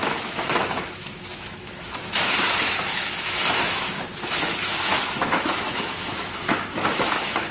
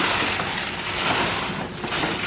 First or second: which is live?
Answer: second